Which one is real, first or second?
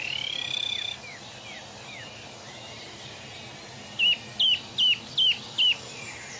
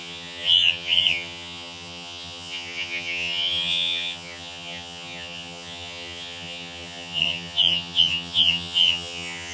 first